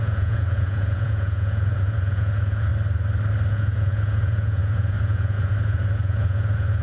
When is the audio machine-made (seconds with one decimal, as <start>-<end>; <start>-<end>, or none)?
0.0-2.7; 3.5-6.8